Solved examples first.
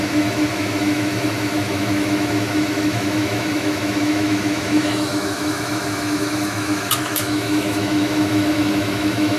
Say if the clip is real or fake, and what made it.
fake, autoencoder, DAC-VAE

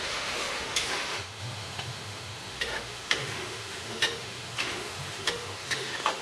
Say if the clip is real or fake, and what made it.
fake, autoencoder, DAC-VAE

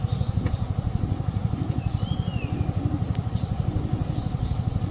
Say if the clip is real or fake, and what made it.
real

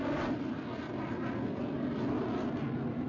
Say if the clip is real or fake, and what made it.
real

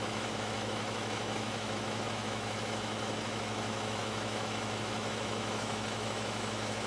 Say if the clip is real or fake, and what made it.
fake, autoencoder, DAC-VAE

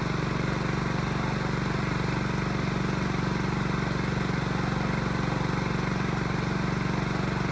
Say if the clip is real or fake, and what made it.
real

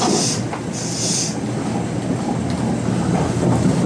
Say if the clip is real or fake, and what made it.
real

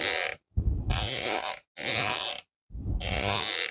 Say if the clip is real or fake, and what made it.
real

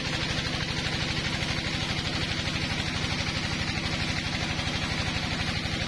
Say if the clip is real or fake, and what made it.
real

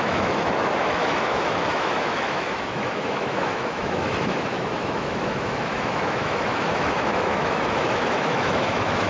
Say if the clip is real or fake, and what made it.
fake, autoencoder, DAC-VAE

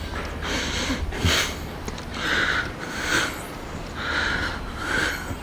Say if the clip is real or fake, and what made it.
real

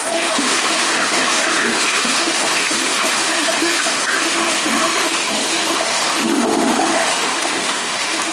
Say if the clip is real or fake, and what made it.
fake, autoencoder, DAC-VAE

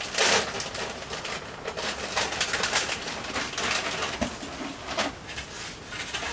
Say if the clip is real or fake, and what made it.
real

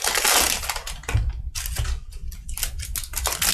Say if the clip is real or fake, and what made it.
real